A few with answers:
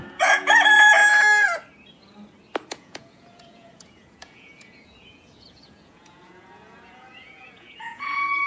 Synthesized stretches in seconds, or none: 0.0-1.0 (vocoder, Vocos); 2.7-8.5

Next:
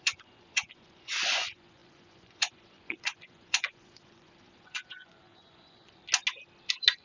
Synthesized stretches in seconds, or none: 0.0-6.0 (vocoder, Vocos)

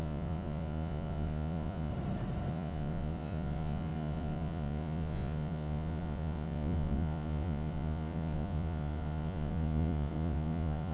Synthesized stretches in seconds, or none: 0.0-1.9 (vocoder, Vocos); 2.5-10.9

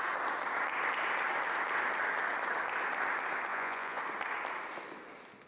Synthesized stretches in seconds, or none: 3.5-4.0 (vocoder, Vocos)

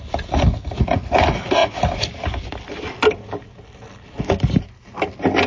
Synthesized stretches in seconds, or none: none

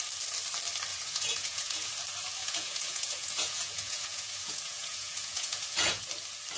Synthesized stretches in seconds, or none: 0.9-1.9 (vocoder, Vocos); 2.4-6.1

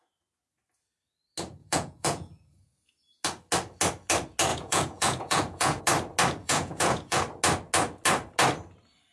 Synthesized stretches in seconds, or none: 1.6-2.9 (vocoder, Vocos); 4.5-5.8; 6.4-7.2